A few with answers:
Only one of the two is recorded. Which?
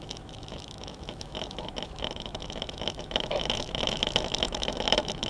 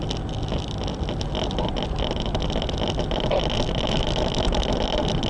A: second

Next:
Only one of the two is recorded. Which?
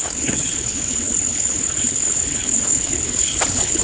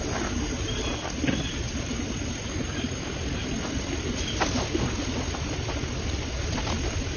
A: second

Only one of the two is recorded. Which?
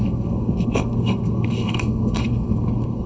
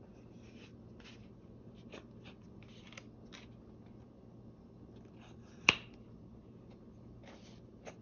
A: second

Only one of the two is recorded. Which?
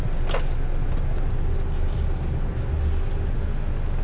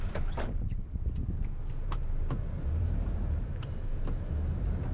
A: first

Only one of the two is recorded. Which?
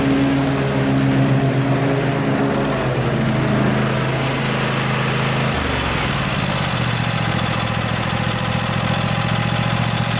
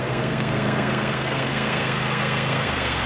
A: first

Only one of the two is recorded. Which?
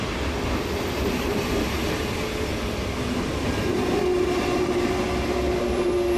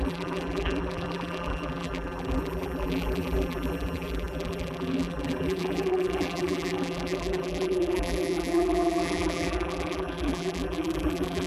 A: first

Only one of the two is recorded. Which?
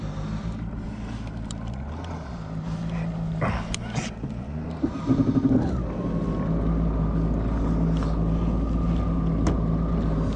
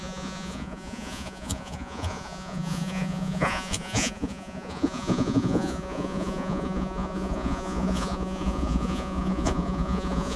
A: first